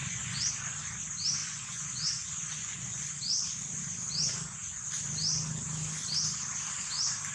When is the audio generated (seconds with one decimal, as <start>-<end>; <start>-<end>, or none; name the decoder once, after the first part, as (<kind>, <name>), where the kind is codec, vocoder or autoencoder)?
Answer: 0.0-0.5 (vocoder, Vocos); 1.4-3.0